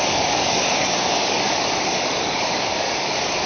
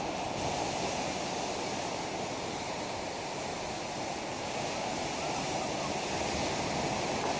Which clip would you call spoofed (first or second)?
first